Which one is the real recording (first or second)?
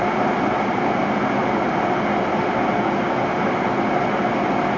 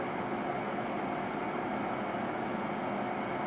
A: second